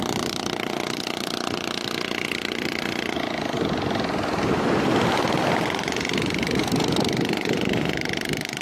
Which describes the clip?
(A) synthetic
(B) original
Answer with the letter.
B